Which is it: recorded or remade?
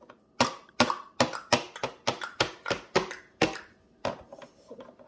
recorded